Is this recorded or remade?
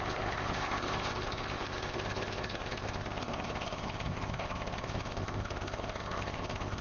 remade